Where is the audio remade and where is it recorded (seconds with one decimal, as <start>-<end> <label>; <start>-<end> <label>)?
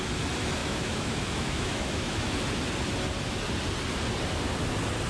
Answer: 0.0-0.6 recorded; 0.6-2.3 remade; 2.3-5.1 recorded